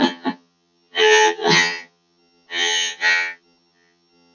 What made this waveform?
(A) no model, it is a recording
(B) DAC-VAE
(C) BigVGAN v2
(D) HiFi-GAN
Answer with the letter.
D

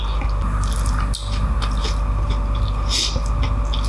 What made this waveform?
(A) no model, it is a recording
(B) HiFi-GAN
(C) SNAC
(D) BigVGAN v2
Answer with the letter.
A